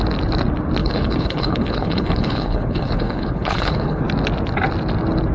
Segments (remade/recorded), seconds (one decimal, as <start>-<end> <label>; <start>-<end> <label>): 0.0-0.8 recorded; 0.8-4.0 remade; 4.0-5.3 recorded